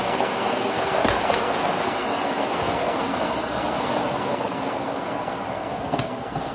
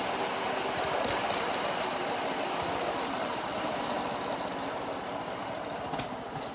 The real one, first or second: second